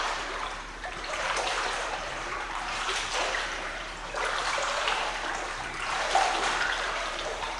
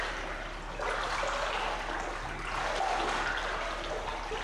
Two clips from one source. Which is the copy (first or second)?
first